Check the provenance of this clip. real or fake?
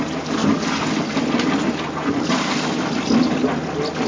real